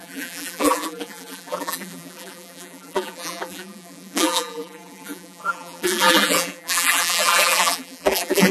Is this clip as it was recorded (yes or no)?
no